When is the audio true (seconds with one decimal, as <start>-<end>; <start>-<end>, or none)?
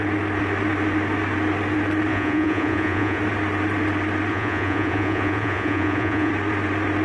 0.0-2.1; 3.2-4.3; 6.3-7.0